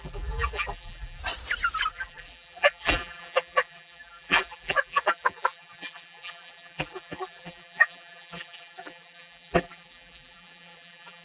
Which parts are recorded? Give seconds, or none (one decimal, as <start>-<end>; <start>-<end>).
1.2-1.9

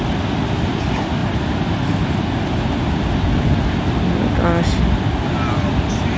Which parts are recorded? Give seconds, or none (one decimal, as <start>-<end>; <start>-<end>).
0.0-6.2

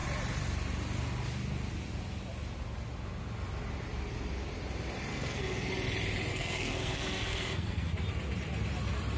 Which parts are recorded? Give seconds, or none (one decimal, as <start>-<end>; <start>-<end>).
0.0-5.1; 5.7-6.3; 7.9-9.2

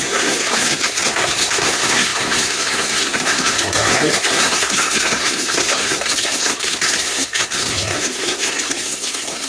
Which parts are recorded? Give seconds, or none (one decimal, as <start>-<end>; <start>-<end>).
none

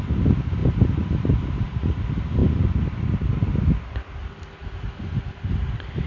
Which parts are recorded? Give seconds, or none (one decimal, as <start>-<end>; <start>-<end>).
0.0-6.1

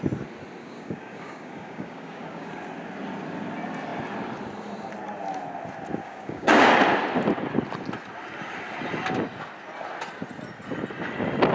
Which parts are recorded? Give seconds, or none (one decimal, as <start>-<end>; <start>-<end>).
0.0-0.6; 2.5-6.0; 6.7-11.5

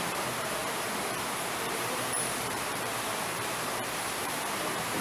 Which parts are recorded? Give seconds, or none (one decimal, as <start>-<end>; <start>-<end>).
none